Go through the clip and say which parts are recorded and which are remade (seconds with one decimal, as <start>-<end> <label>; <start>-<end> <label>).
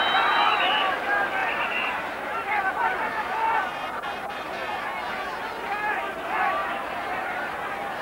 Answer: 0.0-1.4 recorded; 1.4-4.8 remade; 4.8-6.6 recorded; 6.6-7.5 remade; 7.5-8.0 recorded